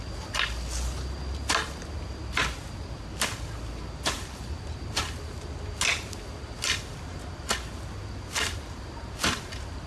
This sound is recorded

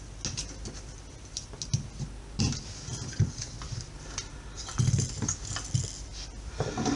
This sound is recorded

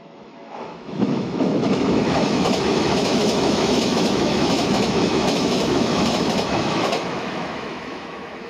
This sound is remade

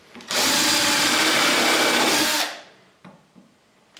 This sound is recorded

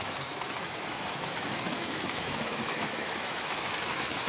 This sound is remade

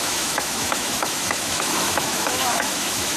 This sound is remade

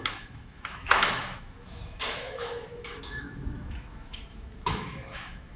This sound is remade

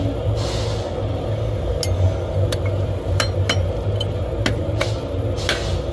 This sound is recorded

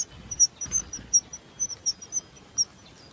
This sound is recorded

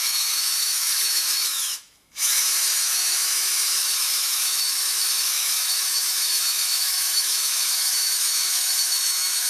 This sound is remade